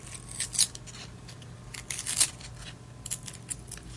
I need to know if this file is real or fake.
real